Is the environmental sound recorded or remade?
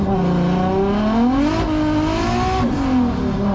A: recorded